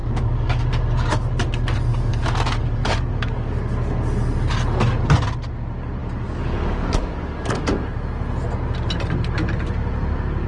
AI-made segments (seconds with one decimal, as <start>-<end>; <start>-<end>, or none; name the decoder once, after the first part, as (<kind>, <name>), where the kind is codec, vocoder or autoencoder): 0.0-1.5 (codec, DAC); 1.9-4.1; 6.0-7.7